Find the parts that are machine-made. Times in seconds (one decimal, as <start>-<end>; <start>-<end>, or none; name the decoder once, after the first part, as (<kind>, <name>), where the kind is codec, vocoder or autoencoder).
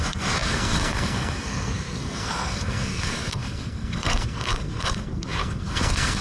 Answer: 0.0-6.2 (codec, SNAC)